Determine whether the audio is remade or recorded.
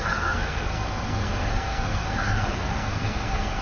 remade